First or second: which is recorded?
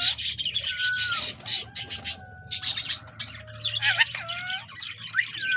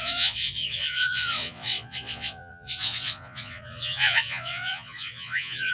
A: first